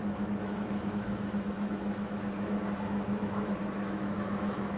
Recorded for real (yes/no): no